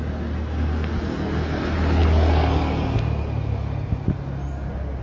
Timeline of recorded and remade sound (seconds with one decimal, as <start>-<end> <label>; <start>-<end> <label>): 0.0-5.0 recorded